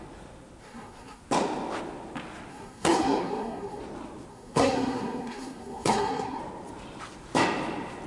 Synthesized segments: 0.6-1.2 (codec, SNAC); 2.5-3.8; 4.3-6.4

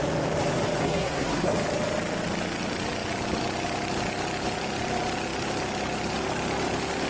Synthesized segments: 0.8-1.5 (codec, SNAC)

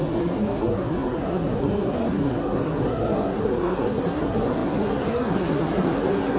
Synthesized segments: 0.0-6.4 (codec, SNAC)

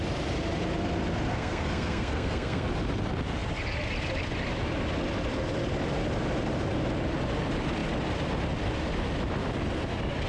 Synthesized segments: 1.3-2.7 (codec, SNAC)

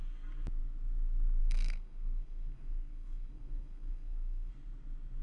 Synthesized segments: 1.4-4.5 (codec, SNAC)